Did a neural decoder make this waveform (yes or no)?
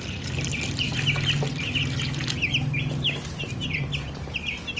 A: no